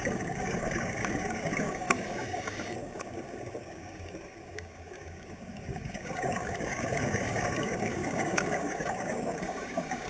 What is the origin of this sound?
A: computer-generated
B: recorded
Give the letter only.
A